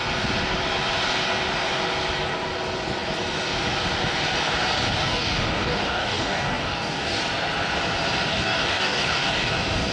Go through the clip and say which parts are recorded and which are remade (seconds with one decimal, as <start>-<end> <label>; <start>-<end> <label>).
0.0-5.0 recorded; 5.0-7.2 remade; 7.2-8.3 recorded; 8.3-9.5 remade; 9.5-9.9 recorded